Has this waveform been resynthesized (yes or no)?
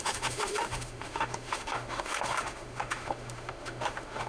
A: yes